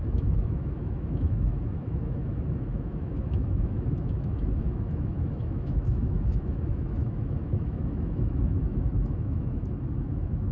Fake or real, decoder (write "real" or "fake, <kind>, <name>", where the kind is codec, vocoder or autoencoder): fake, autoencoder, DAC-VAE